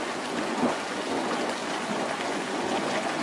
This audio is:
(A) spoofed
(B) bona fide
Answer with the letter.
A